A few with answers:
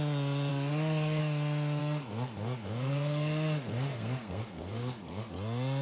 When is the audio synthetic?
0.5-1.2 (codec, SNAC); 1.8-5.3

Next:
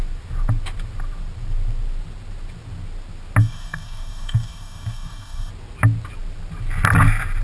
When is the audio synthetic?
3.4-5.5 (codec, DAC)

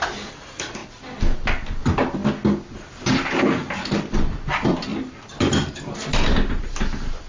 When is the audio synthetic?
0.0-0.8 (vocoder, BigVGAN v2); 1.8-2.2; 3.1-4.9; 6.5-7.3

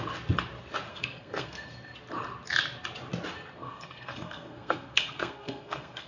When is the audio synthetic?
0.9-1.7 (codec, SNAC); 3.6-6.1

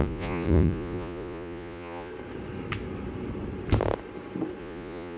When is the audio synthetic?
0.0-2.1 (vocoder, Vocos); 4.6-5.2

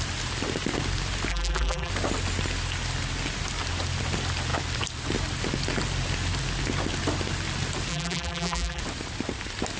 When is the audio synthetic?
1.3-1.9 (vocoder, BigVGAN v2); 7.9-8.8

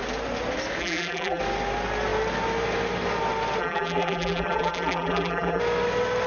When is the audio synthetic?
0.8-1.4 (vocoder, BigVGAN v2); 3.6-5.6